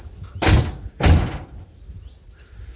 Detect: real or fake real